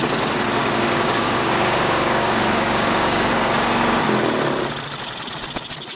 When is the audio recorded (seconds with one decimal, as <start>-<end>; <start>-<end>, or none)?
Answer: 0.0-0.6; 4.0-6.0